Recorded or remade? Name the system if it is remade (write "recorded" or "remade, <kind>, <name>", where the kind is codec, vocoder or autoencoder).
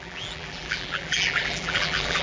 remade, vocoder, BigVGAN v2